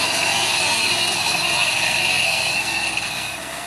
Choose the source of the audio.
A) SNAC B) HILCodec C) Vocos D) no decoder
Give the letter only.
A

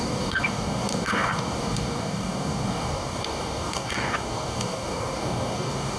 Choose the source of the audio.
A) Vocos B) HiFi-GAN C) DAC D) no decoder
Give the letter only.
C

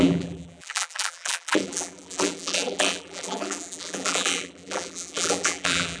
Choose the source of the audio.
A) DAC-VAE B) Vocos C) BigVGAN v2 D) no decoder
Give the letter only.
C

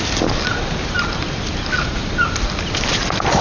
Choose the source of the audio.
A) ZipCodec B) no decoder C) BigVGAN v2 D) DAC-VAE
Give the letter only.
B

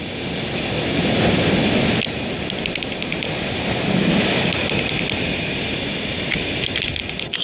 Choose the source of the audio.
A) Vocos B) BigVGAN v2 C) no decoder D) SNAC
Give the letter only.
C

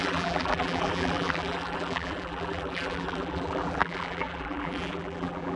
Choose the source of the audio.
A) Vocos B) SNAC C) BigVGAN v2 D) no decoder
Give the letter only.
C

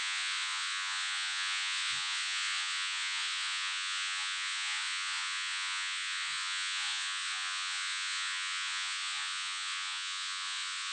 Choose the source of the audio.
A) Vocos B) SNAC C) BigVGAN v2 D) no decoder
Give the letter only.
A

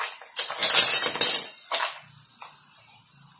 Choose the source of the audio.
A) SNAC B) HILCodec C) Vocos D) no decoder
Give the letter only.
D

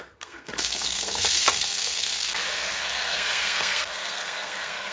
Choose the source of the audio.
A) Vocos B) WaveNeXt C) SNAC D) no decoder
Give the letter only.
C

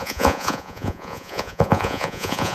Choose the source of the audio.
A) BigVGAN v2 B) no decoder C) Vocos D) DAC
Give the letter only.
C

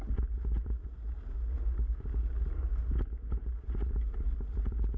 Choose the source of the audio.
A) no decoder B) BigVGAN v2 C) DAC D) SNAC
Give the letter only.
A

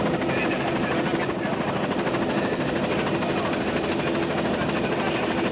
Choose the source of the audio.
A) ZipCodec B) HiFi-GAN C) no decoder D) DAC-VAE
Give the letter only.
C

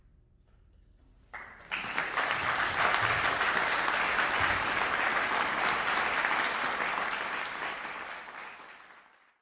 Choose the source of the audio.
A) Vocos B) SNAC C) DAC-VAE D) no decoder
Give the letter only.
D